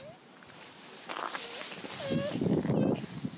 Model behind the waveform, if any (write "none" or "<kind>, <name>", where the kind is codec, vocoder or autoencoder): none